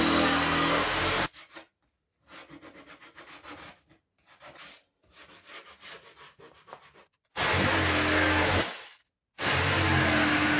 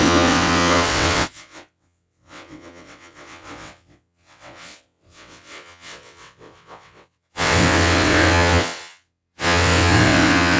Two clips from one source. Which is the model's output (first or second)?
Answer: second